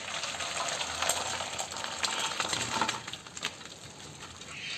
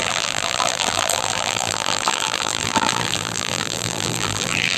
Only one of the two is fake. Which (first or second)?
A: second